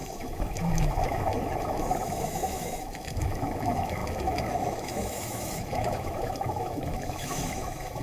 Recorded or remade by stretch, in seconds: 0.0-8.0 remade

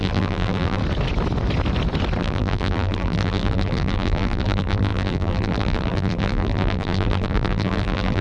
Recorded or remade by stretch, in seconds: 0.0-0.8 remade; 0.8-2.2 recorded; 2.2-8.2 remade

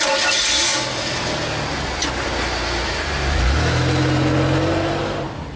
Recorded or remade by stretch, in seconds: 0.0-0.7 recorded; 0.7-1.2 remade; 1.2-5.6 recorded

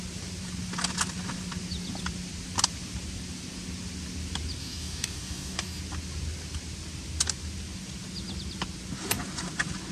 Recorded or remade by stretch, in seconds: 0.0-4.6 recorded; 4.6-5.8 remade; 5.8-9.9 recorded